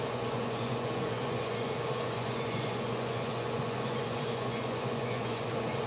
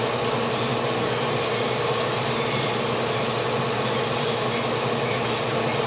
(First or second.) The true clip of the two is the second